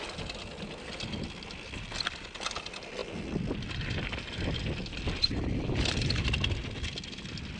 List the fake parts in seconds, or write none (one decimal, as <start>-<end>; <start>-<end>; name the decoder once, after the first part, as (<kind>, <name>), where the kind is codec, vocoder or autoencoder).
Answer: none